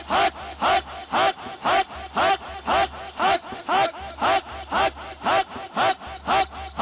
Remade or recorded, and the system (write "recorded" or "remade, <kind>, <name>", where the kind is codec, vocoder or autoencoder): recorded